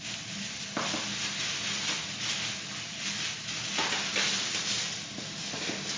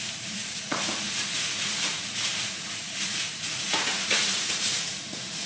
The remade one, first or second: second